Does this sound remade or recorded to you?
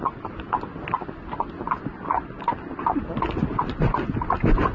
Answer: recorded